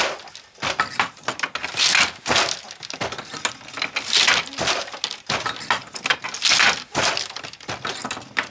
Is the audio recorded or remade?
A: recorded